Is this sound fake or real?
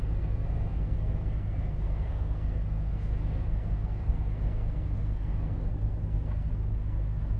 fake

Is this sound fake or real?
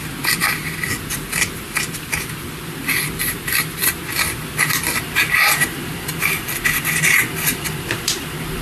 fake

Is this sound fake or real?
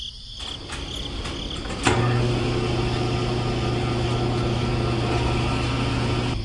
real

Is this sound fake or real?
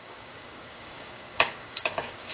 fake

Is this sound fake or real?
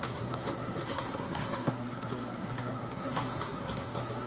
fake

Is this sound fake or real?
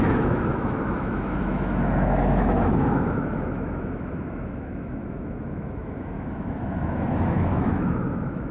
fake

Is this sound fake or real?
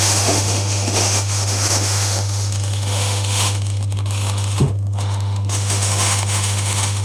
fake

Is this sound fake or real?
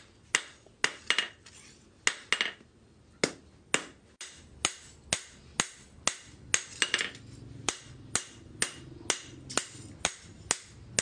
real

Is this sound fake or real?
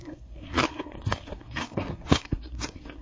fake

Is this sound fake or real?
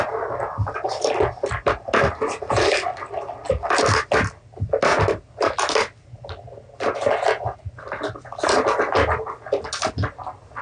real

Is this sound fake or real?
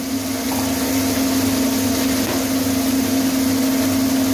real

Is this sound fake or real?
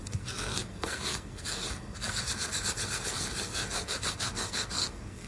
fake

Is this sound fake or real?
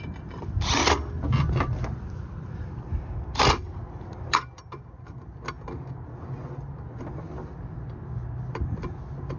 real